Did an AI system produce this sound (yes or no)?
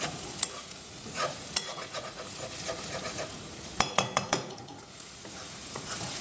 yes